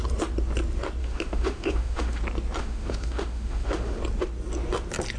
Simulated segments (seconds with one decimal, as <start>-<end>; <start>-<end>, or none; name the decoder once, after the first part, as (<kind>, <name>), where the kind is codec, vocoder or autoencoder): 1.0-2.2 (autoencoder, DAC-VAE); 2.6-4.0